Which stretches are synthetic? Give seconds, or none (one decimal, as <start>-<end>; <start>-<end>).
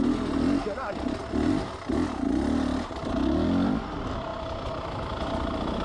none